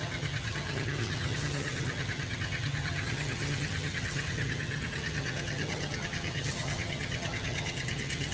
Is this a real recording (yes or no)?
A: no